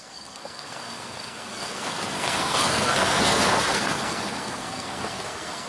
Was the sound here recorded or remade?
remade